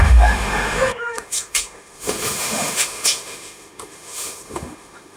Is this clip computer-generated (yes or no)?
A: yes